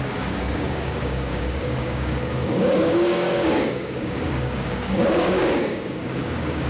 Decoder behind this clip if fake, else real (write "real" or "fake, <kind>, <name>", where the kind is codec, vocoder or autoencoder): fake, codec, DAC